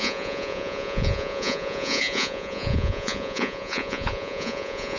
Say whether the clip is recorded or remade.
remade